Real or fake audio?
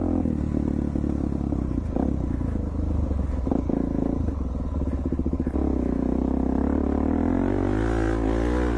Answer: real